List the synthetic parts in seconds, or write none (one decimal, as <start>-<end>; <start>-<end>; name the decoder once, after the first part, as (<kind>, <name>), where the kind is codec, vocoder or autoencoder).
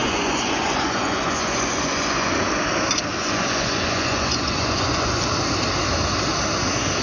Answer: 0.0-2.3 (vocoder, Vocos); 3.2-5.2